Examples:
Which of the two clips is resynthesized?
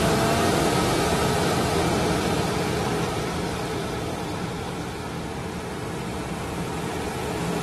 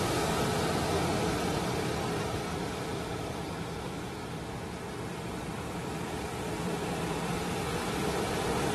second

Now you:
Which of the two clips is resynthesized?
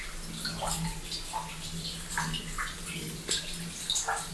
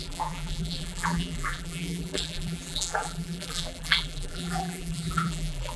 second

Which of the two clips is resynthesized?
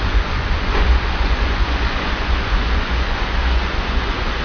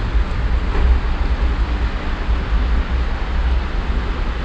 first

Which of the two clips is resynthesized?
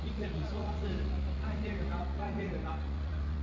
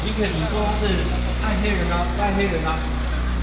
first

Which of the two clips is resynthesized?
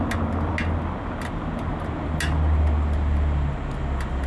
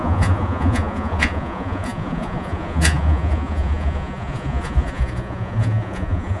second